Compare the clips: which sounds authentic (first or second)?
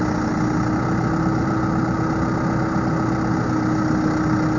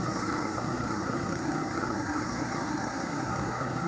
first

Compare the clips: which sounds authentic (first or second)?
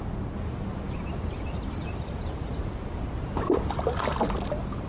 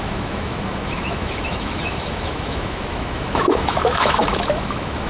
first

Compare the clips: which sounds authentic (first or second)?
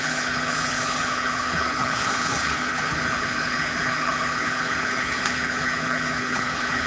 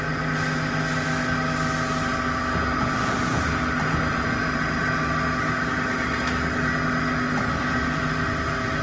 second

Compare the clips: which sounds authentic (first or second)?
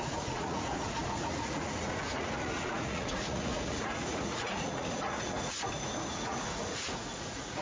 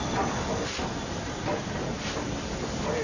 second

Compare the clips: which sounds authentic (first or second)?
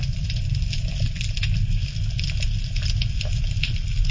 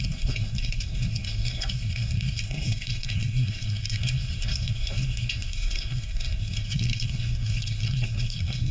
first